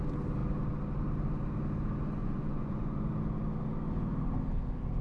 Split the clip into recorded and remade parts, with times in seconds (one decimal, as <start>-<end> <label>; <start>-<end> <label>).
0.0-2.2 recorded; 2.2-3.0 remade; 3.0-5.0 recorded